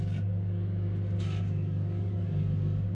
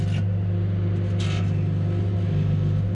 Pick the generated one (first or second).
first